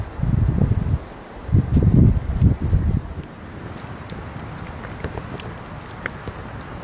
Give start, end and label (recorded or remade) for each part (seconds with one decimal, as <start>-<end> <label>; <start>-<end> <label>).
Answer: 0.0-6.8 recorded